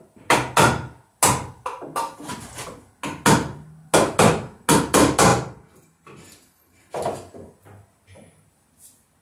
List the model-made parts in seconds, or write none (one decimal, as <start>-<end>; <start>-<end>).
none